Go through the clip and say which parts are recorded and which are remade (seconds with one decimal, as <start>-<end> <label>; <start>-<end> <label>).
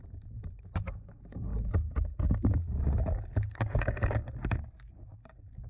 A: 0.0-1.5 remade; 1.5-4.9 recorded; 4.9-5.7 remade